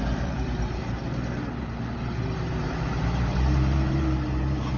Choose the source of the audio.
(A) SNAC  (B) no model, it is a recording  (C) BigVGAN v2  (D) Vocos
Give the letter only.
C